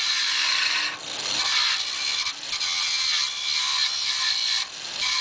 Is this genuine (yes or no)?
yes